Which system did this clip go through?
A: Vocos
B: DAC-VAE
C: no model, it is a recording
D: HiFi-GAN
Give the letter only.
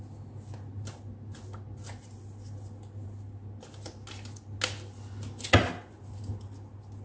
C